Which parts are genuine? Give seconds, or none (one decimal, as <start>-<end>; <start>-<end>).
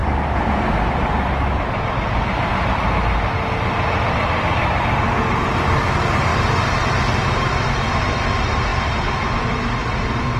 0.0-10.4